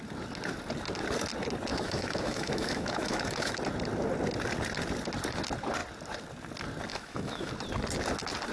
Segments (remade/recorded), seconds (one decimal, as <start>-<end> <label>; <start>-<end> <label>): 0.0-1.7 recorded; 1.7-3.6 remade; 3.6-6.9 recorded; 6.9-7.5 remade; 7.5-8.5 recorded